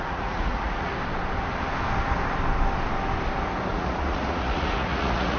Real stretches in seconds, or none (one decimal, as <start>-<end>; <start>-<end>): 0.9-3.7

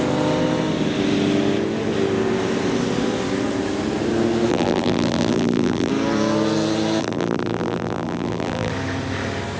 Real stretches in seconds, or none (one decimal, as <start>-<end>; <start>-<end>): 0.0-4.5; 5.9-7.0; 8.7-9.6

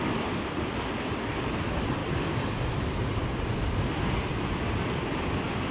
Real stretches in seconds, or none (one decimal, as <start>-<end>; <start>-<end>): 0.0-5.7

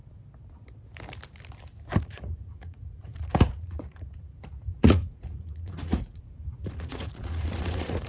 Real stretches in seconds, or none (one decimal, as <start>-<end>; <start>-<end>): 0.0-2.0

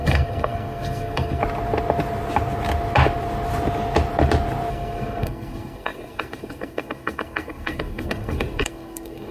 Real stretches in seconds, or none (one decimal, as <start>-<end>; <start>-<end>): 1.4-4.7

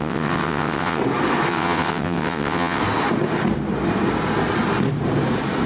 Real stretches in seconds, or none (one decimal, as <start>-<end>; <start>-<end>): 1.0-1.5; 2.8-5.7